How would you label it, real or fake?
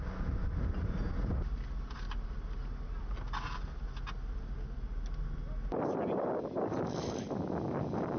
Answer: real